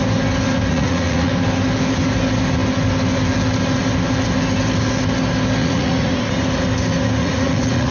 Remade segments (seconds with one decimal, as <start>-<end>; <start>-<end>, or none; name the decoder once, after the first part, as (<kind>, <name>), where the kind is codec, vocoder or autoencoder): 0.7-1.3 (vocoder, Vocos); 5.6-6.2; 7.2-7.9